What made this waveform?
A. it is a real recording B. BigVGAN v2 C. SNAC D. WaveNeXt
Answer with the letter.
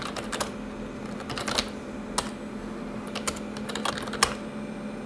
A